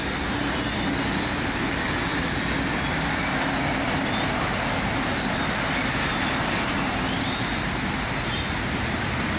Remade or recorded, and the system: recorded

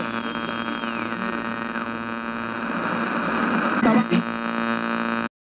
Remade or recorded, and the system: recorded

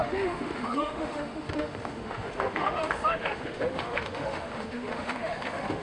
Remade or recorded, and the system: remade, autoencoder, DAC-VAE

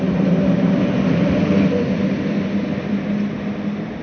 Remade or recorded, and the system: recorded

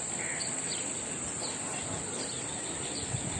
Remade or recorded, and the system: recorded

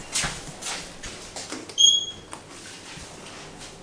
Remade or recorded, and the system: recorded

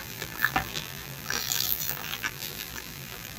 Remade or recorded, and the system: remade, vocoder, BigVGAN v2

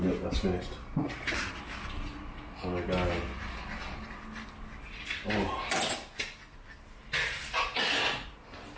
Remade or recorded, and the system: recorded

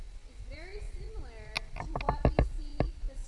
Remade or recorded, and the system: recorded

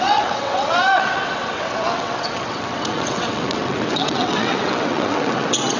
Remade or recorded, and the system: remade, vocoder, WaveNeXt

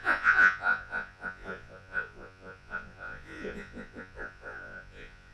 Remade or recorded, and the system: remade, vocoder, Vocos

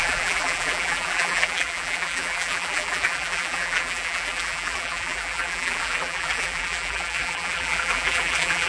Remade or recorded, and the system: remade, vocoder, BigVGAN v2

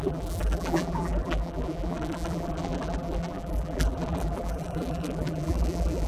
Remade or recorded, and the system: remade, vocoder, BigVGAN v2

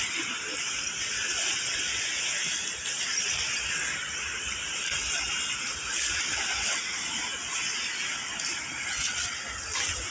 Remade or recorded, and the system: recorded